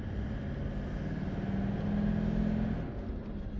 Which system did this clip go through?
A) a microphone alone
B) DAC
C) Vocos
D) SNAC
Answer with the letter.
A